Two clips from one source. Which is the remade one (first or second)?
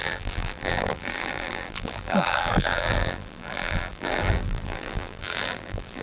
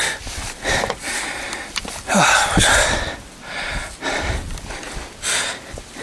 first